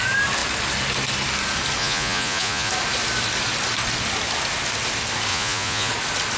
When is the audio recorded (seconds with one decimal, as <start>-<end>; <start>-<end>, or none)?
0.0-1.8; 2.7-5.3; 5.9-6.4